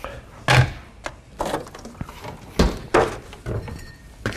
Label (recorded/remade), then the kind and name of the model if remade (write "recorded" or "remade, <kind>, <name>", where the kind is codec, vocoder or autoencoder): recorded